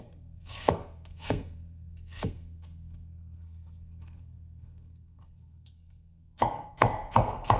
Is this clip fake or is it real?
fake